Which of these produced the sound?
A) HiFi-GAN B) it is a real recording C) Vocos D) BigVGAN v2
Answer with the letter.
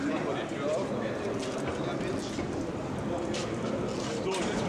B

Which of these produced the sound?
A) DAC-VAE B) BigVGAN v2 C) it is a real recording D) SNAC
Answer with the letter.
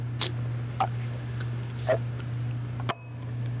C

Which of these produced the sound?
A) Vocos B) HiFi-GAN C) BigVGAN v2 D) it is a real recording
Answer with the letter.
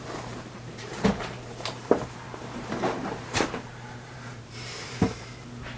C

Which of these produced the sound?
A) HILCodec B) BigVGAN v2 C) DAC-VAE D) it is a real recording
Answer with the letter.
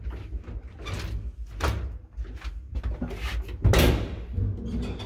D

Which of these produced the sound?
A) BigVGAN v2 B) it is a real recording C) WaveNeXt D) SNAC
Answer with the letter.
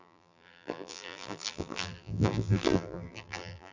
A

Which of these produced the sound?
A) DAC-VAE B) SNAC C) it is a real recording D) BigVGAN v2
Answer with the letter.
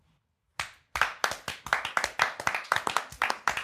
C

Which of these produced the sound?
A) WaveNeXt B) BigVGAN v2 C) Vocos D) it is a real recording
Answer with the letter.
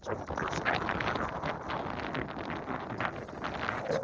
D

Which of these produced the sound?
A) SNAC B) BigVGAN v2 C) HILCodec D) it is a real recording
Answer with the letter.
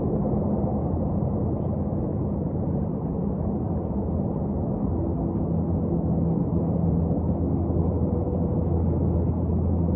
D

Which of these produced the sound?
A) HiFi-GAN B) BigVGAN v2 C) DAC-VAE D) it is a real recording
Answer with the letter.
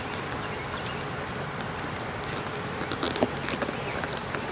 D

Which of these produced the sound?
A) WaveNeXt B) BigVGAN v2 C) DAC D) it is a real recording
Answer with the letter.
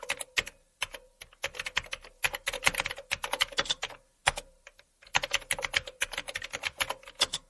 D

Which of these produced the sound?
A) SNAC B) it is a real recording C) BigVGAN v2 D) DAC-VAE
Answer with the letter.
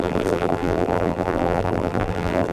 C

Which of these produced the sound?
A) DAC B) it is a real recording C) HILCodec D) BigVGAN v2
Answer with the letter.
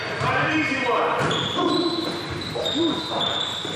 D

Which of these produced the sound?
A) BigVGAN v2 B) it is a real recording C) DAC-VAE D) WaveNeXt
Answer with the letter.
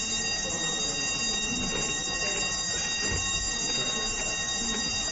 B